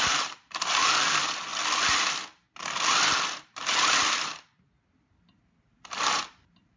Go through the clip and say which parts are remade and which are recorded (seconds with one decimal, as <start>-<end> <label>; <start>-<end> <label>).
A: 0.0-1.5 remade; 1.5-5.6 recorded; 5.6-6.8 remade